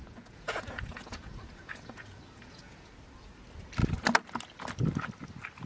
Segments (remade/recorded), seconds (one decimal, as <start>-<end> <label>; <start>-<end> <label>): 0.0-2.9 remade; 2.9-5.7 recorded